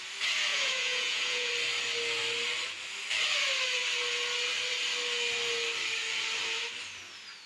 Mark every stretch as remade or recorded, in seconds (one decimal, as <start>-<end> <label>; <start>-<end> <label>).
0.0-0.5 recorded; 0.5-1.5 remade; 1.5-7.5 recorded

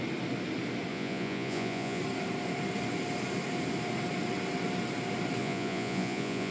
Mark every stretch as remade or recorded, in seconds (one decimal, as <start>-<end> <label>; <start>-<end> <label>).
0.0-0.9 recorded; 0.9-2.0 remade; 2.0-5.4 recorded; 5.4-6.5 remade

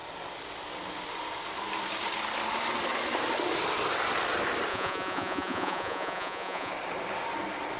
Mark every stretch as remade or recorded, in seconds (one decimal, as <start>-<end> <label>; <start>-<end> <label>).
0.0-4.7 recorded; 4.7-6.7 remade; 6.7-7.8 recorded

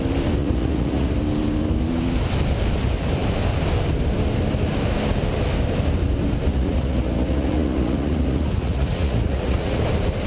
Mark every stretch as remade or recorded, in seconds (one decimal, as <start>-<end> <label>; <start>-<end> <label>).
0.0-0.4 recorded; 0.4-1.1 remade; 1.1-6.5 recorded; 6.5-9.8 remade; 9.8-10.3 recorded

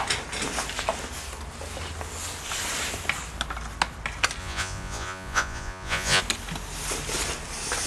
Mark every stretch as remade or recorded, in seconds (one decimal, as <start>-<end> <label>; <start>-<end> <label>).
0.0-4.4 recorded; 4.4-6.2 remade; 6.2-7.9 recorded

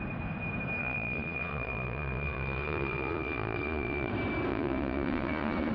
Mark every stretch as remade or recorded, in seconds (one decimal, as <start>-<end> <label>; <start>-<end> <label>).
0.0-0.8 recorded; 0.8-4.1 remade; 4.1-4.5 recorded; 4.5-5.7 remade

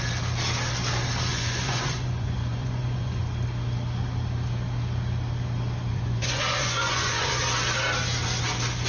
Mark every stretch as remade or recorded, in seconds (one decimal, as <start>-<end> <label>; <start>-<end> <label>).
0.0-1.3 recorded; 1.3-3.2 remade; 3.2-5.9 recorded; 5.9-7.4 remade; 7.4-8.9 recorded

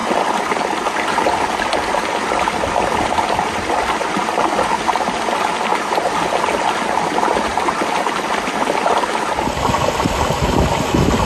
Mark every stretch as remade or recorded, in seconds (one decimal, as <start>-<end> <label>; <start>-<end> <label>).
0.0-11.3 recorded